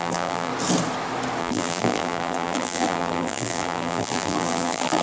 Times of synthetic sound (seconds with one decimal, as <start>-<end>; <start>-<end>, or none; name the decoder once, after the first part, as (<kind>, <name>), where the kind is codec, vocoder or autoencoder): 0.0-0.5 (vocoder, BigVGAN v2); 1.4-5.0